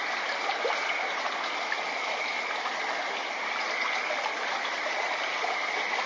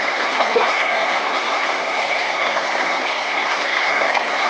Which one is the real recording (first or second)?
first